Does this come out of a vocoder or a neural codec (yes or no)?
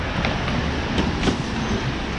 no